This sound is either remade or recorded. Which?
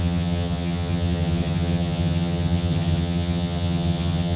remade